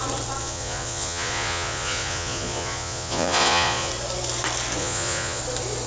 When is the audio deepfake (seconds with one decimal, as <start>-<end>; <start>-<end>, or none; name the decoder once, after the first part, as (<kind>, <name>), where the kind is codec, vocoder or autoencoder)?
0.4-3.9 (vocoder, Vocos); 4.8-5.4